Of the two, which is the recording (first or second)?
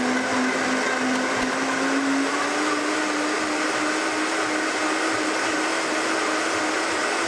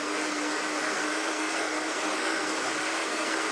first